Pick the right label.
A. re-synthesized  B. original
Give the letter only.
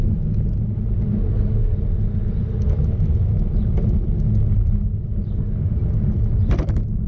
B